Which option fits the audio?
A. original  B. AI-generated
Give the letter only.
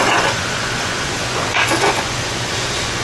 B